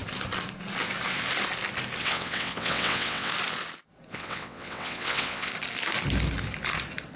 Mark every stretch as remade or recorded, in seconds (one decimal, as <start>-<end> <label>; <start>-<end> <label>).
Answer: 0.0-2.0 recorded; 2.0-3.3 remade; 3.3-4.1 recorded; 4.1-5.5 remade; 5.5-7.2 recorded